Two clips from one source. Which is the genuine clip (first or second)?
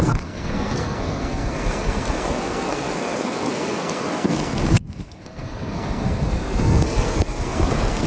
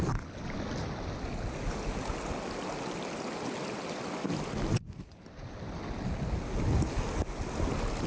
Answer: second